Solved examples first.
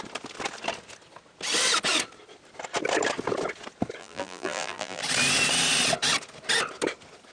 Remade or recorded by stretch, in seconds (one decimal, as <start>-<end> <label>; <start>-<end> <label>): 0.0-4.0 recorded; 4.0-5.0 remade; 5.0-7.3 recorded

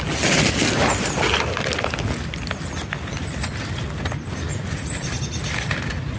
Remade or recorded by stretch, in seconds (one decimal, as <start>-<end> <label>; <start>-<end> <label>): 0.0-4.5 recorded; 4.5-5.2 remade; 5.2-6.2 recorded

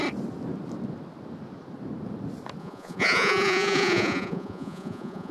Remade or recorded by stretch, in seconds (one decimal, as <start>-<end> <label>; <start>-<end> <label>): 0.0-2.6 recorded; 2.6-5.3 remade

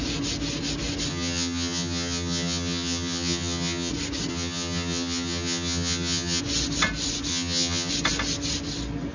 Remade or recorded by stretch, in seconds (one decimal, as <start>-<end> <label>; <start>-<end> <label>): 0.0-1.1 recorded; 1.1-3.9 remade; 3.9-4.3 recorded; 4.3-6.4 remade; 6.4-7.3 recorded; 7.3-7.9 remade; 7.9-9.1 recorded